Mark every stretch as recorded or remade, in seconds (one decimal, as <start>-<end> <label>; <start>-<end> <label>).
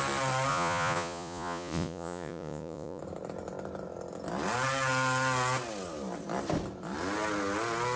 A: 0.0-0.5 recorded; 0.5-3.0 remade; 3.0-8.0 recorded